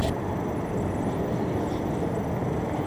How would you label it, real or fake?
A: real